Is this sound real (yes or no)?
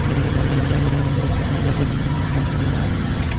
no